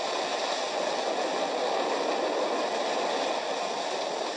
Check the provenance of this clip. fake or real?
real